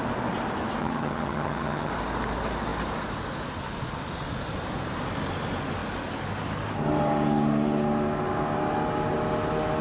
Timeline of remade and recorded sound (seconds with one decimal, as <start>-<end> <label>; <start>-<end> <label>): 0.0-0.8 recorded; 0.8-1.9 remade; 1.9-9.8 recorded